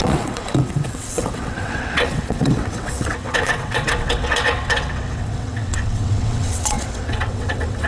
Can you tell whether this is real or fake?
fake